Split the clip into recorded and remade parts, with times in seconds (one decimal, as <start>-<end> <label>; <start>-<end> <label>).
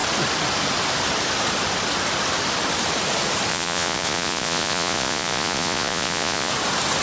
0.0-3.5 recorded; 3.5-6.5 remade; 6.5-7.0 recorded